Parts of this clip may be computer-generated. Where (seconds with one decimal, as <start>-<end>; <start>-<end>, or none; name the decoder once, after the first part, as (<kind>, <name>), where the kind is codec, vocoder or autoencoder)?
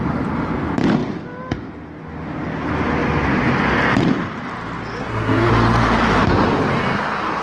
5.0-5.5 (codec, SNAC)